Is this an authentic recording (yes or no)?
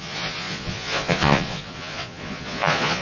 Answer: no